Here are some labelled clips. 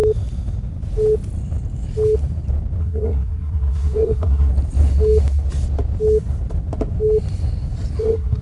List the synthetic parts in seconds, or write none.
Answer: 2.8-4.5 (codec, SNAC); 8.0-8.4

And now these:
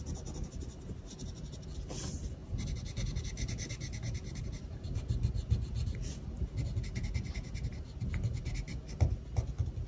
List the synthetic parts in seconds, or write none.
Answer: none

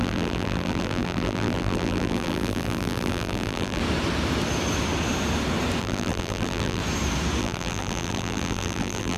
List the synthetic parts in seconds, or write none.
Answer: 0.0-3.8 (vocoder, BigVGAN v2); 5.8-6.8; 7.4-9.2

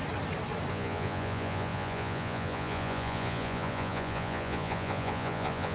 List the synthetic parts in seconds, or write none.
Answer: 0.7-5.7 (vocoder, Vocos)

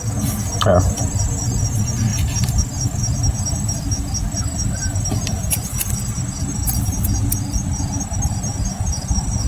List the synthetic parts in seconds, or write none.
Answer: none